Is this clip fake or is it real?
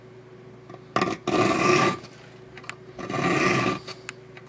real